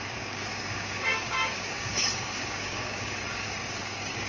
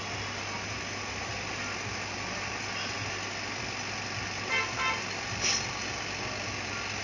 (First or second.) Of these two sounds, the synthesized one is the first